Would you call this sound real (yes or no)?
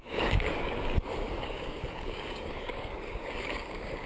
no